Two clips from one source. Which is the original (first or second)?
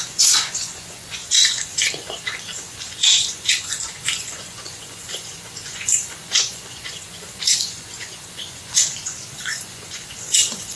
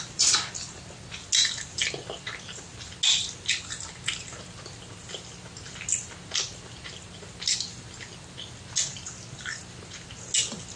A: second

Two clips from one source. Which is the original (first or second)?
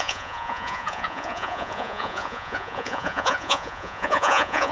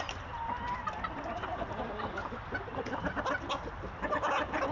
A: second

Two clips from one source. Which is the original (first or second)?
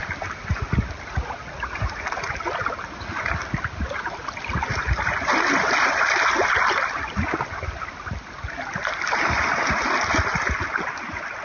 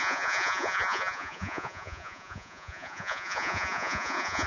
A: first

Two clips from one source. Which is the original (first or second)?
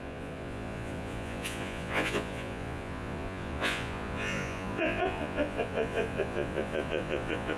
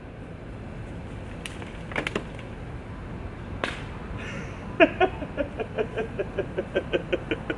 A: second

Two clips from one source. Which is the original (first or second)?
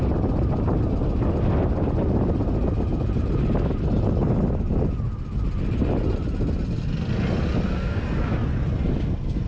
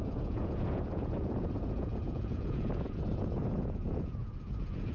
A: first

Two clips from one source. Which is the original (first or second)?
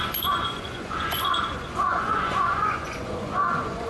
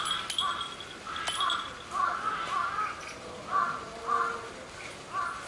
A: second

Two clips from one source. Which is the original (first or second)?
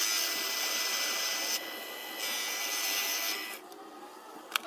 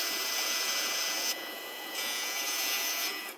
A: first